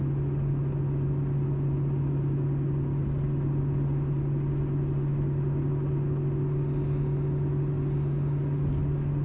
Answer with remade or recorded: recorded